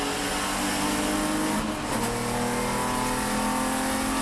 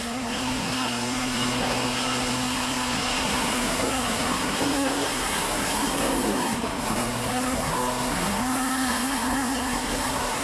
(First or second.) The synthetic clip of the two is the second